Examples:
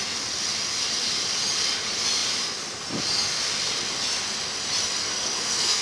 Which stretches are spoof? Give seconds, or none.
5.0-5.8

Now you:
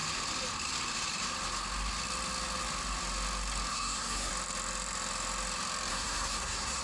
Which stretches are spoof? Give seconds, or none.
3.7-4.3; 5.9-6.8

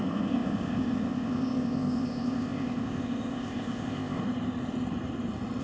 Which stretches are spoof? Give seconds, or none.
0.0-4.2